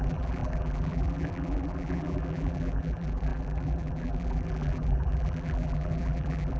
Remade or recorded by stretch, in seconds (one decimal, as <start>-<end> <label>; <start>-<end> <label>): 0.0-6.6 remade